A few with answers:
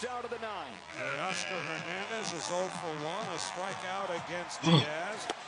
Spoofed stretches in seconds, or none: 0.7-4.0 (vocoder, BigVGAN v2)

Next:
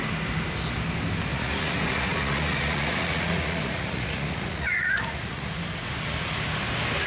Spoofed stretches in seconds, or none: 1.3-5.6 (vocoder, Vocos)

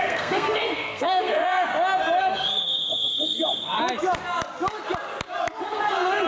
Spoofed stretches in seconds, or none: 0.0-1.7 (codec, SNAC); 2.2-3.8; 5.6-6.3

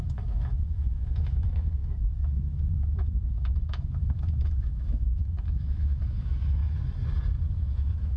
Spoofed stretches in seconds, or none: 0.0-6.6 (autoencoder, DAC-VAE); 7.5-8.2

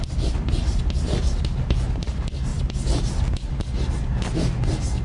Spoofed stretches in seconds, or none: none

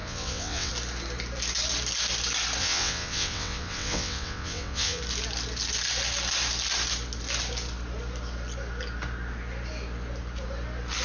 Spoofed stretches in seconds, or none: 0.0-0.7 (vocoder, WaveNeXt); 2.6-5.0

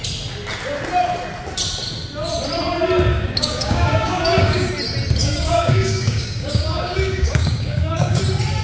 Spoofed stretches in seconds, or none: 3.1-4.7 (codec, DAC); 5.2-8.2

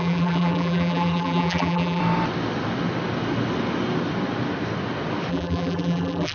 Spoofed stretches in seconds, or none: 0.0-2.0 (vocoder, BigVGAN v2); 5.3-6.3